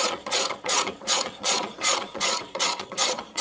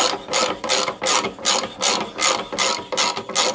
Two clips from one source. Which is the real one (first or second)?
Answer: second